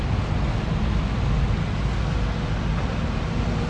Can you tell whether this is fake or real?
real